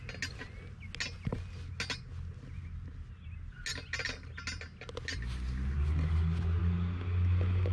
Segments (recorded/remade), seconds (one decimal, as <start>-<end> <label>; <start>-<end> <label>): 0.0-7.7 recorded